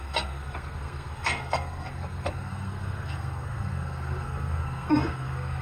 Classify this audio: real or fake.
fake